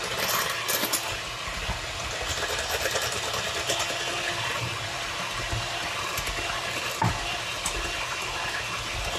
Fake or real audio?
real